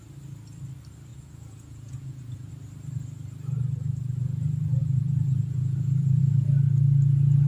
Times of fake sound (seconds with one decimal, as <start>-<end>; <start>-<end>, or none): 1.1-2.5; 4.8-6.2